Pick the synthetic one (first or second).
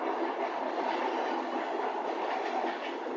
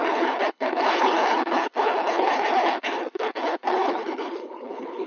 second